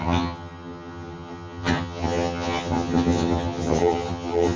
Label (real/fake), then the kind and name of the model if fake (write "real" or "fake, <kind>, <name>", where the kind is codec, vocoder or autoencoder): fake, vocoder, HiFi-GAN